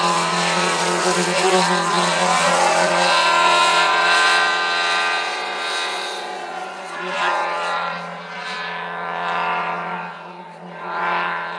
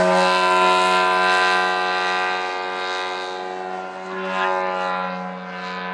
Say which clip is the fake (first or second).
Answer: first